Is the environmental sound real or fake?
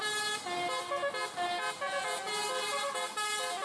real